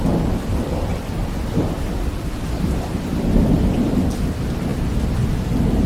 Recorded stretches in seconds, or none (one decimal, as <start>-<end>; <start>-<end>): 0.0-0.5; 4.0-5.9